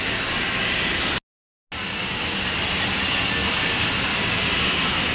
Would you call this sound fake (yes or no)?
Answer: no